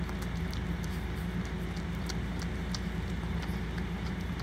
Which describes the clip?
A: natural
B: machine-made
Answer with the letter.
A